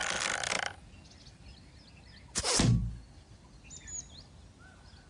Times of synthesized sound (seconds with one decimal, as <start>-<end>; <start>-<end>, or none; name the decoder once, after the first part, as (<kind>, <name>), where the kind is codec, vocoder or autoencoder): none